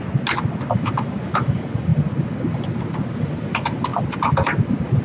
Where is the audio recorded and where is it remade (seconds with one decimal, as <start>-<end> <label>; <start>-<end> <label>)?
0.0-5.0 recorded